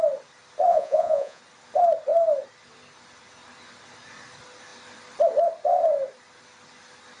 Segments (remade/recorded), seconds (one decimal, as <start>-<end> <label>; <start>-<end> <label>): 0.0-0.7 recorded; 0.7-1.4 remade; 1.4-7.2 recorded